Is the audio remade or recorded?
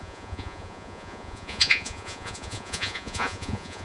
remade